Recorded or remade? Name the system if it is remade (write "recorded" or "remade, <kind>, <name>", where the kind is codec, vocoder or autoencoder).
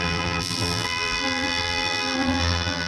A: remade, vocoder, BigVGAN v2